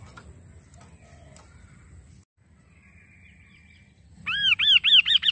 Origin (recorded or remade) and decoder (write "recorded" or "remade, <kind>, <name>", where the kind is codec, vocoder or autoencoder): recorded